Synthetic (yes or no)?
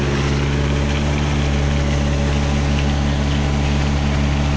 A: no